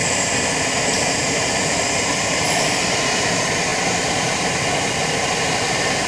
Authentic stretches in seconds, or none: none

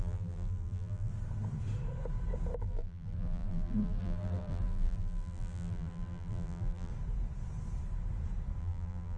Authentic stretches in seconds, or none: 1.1-2.6; 6.9-8.6

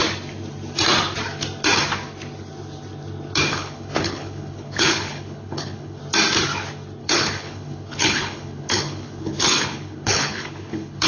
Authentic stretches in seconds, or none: 0.0-3.5; 6.0-7.0